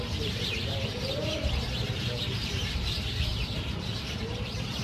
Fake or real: fake